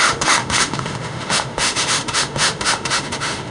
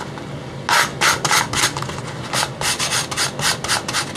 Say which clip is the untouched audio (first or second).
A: second